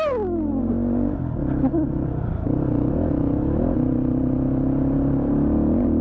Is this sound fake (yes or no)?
no